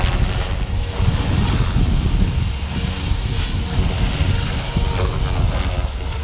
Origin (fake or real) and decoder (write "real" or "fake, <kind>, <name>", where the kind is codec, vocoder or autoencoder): real